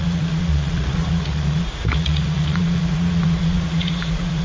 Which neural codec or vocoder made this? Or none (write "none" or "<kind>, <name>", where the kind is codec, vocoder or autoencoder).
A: vocoder, Vocos